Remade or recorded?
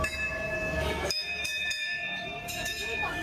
remade